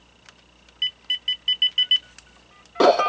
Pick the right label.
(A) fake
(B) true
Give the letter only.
B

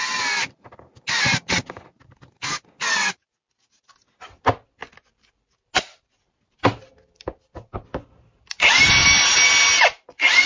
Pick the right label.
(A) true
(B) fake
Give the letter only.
A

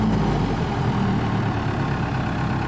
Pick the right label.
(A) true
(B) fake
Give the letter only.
A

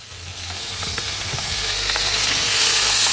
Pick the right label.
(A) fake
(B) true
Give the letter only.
A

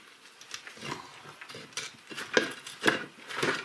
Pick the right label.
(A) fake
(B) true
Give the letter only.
B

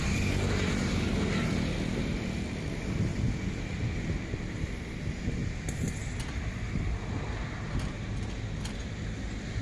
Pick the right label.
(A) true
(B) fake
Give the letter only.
A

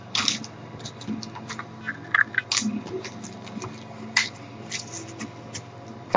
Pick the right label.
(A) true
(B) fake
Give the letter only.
A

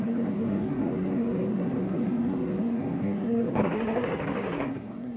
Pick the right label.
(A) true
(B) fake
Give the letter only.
B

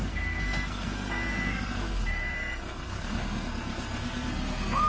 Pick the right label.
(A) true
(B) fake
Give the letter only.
B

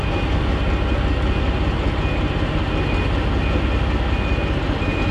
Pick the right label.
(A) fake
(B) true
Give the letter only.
B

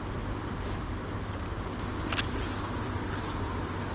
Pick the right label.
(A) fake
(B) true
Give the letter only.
B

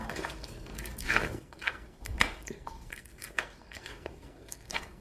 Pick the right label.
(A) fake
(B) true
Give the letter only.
A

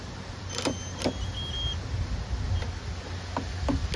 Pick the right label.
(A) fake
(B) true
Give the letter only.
B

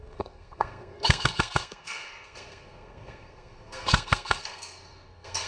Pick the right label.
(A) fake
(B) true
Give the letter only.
A